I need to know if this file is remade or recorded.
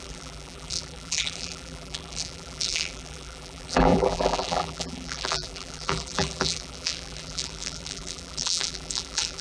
remade